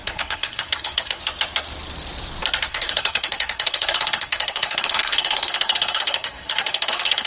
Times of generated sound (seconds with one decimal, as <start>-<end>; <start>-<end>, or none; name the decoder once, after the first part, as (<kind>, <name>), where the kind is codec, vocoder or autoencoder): 0.0-1.2 (codec, SNAC); 2.7-7.3